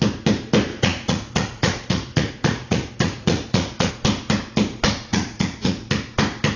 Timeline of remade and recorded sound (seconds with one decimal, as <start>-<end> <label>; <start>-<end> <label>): 0.0-0.7 recorded; 0.7-3.9 remade; 3.9-5.1 recorded; 5.1-5.9 remade; 5.9-6.6 recorded